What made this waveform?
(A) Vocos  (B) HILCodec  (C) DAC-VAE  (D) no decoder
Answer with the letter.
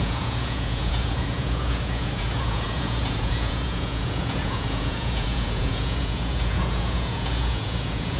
A